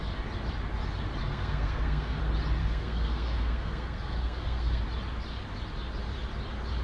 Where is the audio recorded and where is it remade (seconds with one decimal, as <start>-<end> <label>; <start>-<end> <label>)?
0.0-1.2 recorded; 1.2-2.2 remade; 2.2-2.6 recorded; 2.6-4.8 remade; 4.8-6.8 recorded

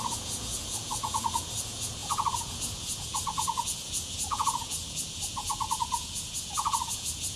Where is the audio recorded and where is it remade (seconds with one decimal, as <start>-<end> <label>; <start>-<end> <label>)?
0.0-7.4 remade

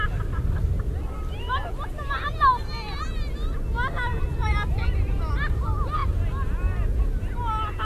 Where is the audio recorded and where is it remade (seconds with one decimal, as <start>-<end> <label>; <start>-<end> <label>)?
0.0-4.1 recorded; 4.1-5.3 remade; 5.3-7.8 recorded

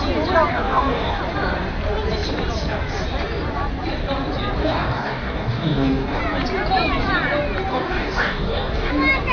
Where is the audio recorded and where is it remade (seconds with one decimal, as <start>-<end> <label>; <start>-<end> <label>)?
0.0-0.5 recorded; 0.5-1.2 remade; 1.2-4.6 recorded; 4.6-6.2 remade; 6.2-7.7 recorded; 7.7-8.9 remade; 8.9-9.3 recorded

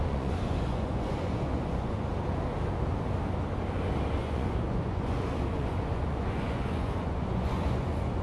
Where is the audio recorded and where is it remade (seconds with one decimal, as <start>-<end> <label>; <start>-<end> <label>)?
0.0-2.1 remade; 2.1-4.1 recorded; 4.1-8.2 remade